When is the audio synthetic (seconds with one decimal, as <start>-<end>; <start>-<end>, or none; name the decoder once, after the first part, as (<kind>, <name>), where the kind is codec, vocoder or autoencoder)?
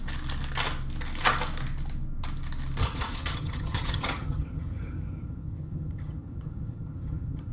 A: 2.8-7.5 (vocoder, HiFi-GAN)